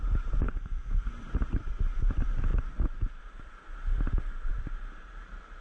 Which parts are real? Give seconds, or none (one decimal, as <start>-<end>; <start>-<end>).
0.0-0.4; 1.1-5.6